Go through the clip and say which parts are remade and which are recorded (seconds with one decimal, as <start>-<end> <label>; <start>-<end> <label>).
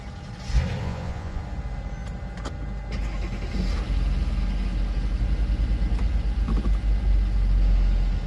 0.0-0.8 recorded; 0.8-1.4 remade; 1.4-8.3 recorded